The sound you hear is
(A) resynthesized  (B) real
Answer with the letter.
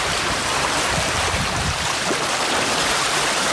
A